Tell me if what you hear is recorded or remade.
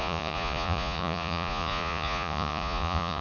remade